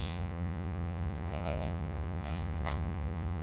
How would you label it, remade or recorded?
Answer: remade